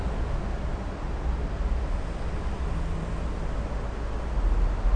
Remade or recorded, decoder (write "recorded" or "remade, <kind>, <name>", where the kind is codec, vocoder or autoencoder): recorded